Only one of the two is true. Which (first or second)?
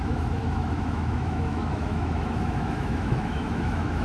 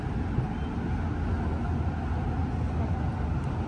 second